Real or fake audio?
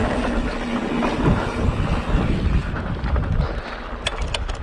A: real